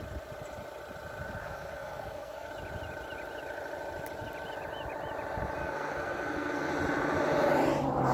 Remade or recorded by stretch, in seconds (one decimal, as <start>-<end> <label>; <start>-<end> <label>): 0.0-1.4 recorded; 1.4-2.5 remade; 2.5-5.6 recorded; 5.6-6.7 remade; 6.7-8.1 recorded

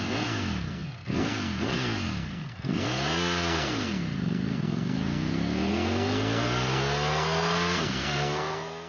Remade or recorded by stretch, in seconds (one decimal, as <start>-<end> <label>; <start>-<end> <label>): 0.0-8.9 remade

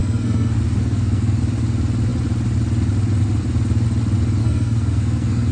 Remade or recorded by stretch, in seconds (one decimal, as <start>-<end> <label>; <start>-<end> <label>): 0.0-1.4 remade; 1.4-4.4 recorded; 4.4-5.5 remade

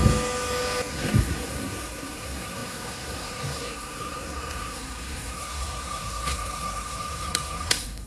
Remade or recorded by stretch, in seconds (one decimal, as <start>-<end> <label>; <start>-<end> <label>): 0.0-0.9 recorded; 0.9-8.1 remade

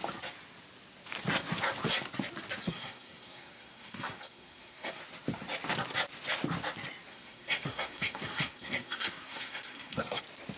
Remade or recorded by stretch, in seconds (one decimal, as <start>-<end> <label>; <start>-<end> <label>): 0.0-2.6 recorded; 2.6-5.0 remade; 5.0-7.1 recorded; 7.1-10.2 remade; 10.2-10.6 recorded

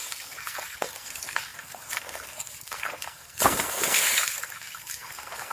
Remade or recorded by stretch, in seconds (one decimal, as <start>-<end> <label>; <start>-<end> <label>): 0.0-5.5 remade